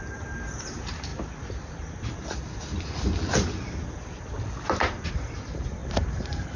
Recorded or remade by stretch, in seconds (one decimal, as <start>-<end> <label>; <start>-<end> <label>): 0.0-1.1 remade; 1.1-5.1 recorded; 5.1-6.6 remade